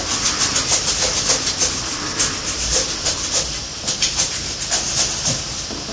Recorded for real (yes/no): yes